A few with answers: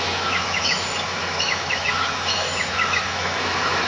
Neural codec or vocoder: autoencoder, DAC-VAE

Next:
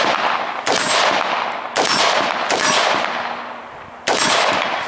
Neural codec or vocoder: none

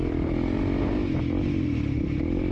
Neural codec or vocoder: none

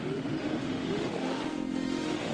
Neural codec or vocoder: autoencoder, DAC-VAE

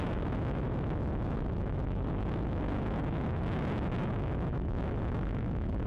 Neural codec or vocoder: autoencoder, DAC-VAE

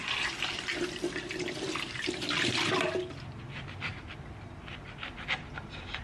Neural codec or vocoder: none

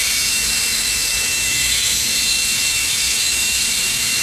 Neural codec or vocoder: autoencoder, DAC-VAE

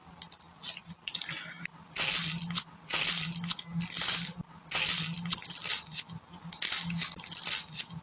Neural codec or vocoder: none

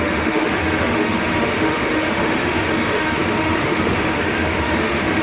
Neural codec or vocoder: autoencoder, DAC-VAE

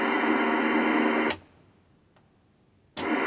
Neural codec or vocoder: none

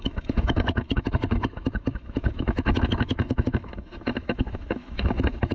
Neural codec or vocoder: autoencoder, DAC-VAE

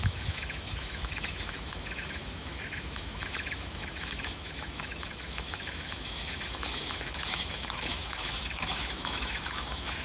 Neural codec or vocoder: autoencoder, DAC-VAE